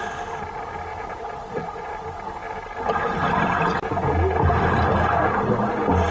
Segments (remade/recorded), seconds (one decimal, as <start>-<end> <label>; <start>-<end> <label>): 0.0-0.9 recorded; 0.9-1.9 remade; 1.9-6.1 recorded